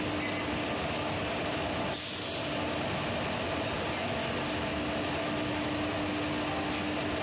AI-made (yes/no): no